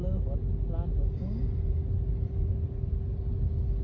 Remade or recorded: recorded